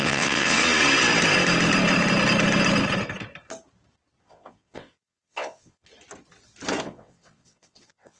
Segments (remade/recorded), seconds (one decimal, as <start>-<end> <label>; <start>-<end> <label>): 0.0-0.6 remade; 0.6-4.2 recorded; 4.2-5.9 remade; 5.9-6.8 recorded; 6.8-8.2 remade

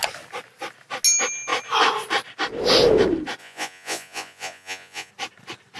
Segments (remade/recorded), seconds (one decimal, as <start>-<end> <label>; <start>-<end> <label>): 0.0-3.4 recorded; 3.4-5.1 remade; 5.1-5.8 recorded

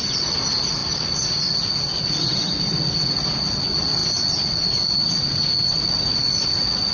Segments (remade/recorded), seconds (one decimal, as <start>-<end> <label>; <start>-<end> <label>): 0.0-6.9 recorded

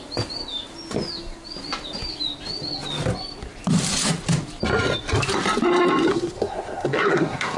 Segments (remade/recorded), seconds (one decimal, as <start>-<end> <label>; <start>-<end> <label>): 0.0-6.1 recorded; 6.1-7.6 remade

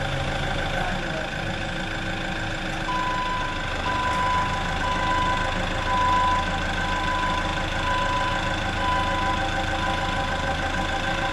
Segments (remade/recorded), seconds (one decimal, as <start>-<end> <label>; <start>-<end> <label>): 0.0-11.3 recorded

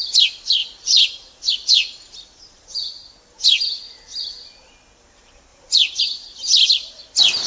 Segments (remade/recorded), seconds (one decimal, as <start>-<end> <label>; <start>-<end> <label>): 0.0-0.6 recorded; 0.6-2.4 remade; 2.4-5.5 recorded; 5.5-6.0 remade; 6.0-7.5 recorded